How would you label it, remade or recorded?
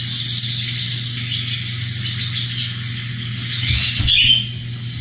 recorded